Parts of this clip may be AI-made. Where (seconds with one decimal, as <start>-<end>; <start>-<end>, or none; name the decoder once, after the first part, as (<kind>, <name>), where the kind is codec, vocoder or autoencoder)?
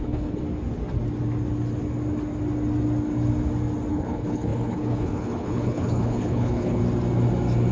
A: 0.0-0.4 (codec, HILCodec); 3.9-6.8